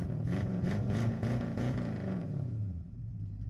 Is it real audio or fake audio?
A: fake